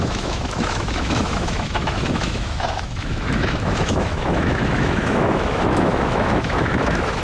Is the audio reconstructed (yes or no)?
yes